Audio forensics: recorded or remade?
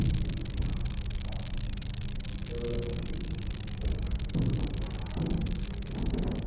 recorded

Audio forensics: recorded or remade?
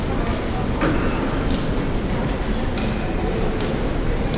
recorded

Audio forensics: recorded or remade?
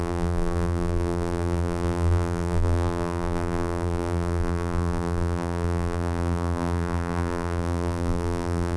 remade